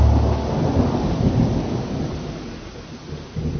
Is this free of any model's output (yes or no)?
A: yes